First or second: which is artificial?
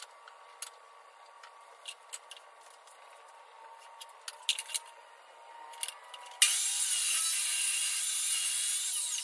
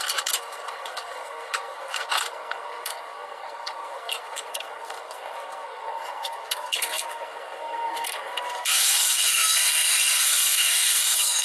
second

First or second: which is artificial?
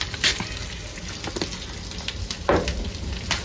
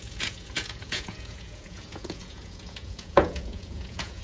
second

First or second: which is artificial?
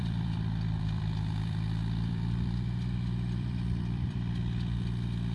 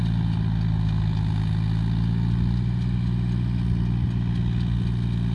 first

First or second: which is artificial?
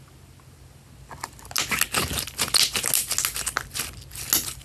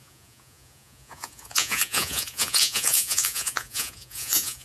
second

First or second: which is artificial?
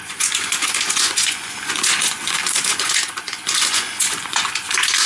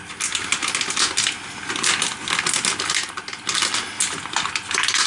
first